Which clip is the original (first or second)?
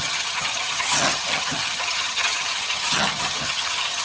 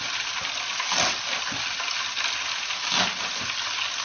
second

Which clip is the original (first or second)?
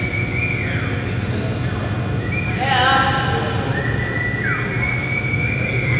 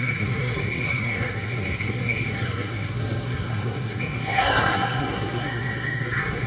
first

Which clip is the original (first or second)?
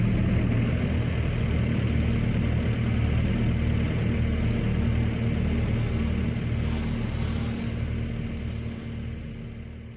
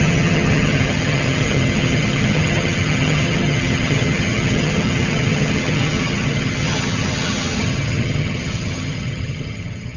first